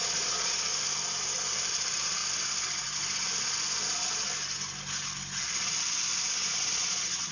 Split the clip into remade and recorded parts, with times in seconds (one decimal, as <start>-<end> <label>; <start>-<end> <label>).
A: 0.0-0.7 remade; 0.7-1.7 recorded; 1.7-2.2 remade; 2.2-5.4 recorded; 5.4-6.1 remade; 6.1-6.7 recorded; 6.7-7.3 remade